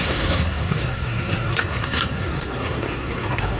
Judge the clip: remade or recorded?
remade